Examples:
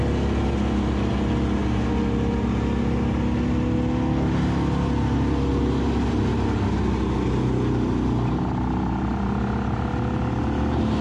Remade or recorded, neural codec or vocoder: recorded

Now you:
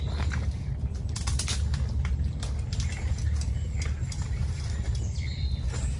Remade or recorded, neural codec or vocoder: recorded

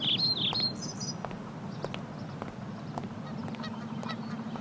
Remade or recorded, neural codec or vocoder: recorded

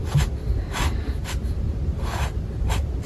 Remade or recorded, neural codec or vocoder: recorded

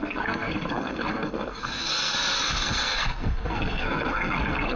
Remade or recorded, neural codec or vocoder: remade, codec, SNAC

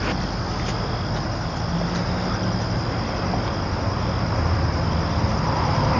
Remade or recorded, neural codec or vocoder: recorded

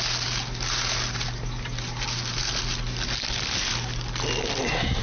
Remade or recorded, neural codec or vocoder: recorded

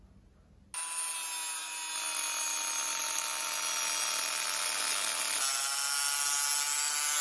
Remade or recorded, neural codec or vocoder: recorded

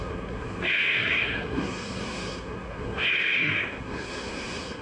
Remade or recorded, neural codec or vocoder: remade, codec, SNAC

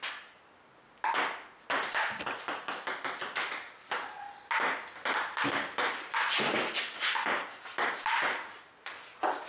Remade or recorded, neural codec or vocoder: recorded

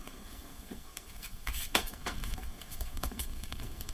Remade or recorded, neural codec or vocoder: remade, codec, SNAC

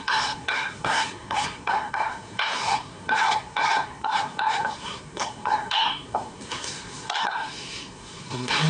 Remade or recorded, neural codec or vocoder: remade, codec, SNAC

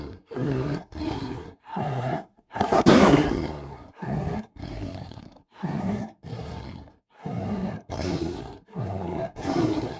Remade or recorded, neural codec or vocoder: remade, codec, SNAC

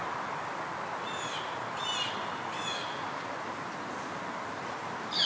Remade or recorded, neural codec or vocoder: recorded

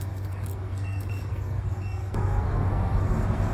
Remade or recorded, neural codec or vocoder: remade, codec, SNAC